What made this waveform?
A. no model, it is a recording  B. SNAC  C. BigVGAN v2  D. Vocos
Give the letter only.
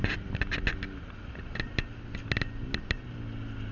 A